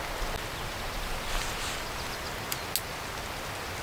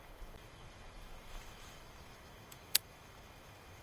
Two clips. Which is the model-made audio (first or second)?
second